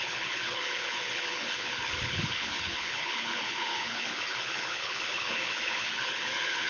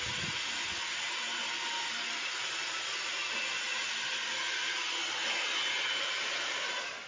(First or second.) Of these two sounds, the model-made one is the first